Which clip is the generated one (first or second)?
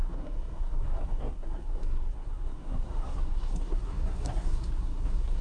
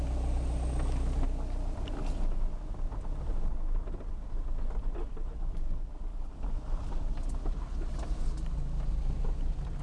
first